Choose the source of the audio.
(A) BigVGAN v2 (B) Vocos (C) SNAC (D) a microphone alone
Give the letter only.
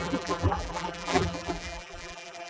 A